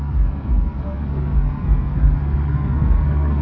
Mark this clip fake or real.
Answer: fake